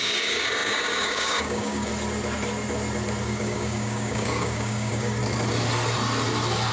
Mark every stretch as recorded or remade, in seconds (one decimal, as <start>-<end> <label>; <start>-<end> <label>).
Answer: 0.0-1.9 remade; 1.9-3.2 recorded; 3.2-5.2 remade; 5.2-6.7 recorded